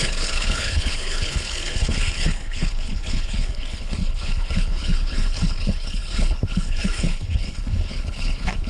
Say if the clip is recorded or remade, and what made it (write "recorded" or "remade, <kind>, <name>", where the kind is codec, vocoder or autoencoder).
remade, codec, HILCodec